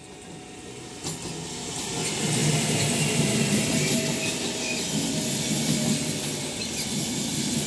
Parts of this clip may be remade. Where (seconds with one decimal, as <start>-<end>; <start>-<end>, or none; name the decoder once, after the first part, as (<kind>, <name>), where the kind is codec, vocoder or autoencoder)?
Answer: none